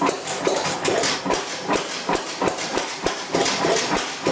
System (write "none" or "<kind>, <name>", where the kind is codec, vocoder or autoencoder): vocoder, BigVGAN v2